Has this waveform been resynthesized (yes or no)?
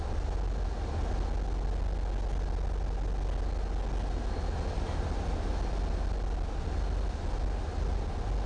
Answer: no